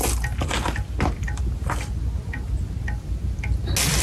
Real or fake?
real